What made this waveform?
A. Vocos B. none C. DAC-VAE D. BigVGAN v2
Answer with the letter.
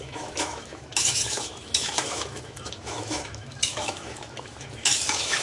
C